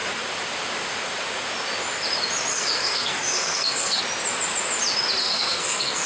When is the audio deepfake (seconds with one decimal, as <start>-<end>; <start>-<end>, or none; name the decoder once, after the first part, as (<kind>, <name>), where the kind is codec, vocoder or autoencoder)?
2.5-4.0 (codec, SNAC); 5.2-6.1